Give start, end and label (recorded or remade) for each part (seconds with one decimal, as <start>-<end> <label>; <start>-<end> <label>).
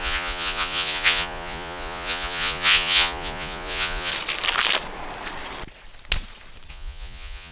0.0-4.1 remade; 4.1-6.7 recorded; 6.7-7.5 remade